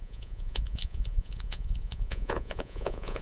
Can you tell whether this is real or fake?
fake